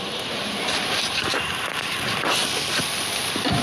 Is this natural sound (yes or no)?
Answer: yes